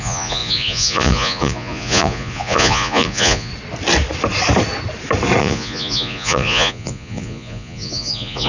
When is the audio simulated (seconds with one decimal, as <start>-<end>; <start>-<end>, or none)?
0.0-3.5; 5.4-8.5